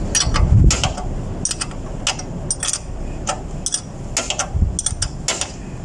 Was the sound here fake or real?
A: real